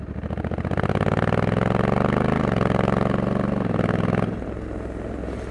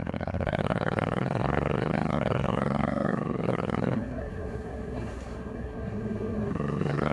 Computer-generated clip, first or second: second